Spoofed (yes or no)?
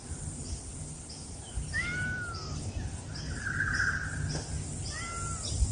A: no